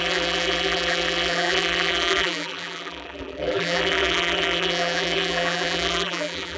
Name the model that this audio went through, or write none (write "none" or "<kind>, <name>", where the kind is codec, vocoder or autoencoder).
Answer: vocoder, BigVGAN v2